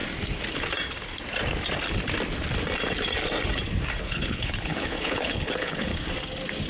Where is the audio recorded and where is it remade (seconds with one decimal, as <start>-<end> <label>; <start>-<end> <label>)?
0.0-4.0 recorded; 4.0-5.9 remade; 5.9-6.7 recorded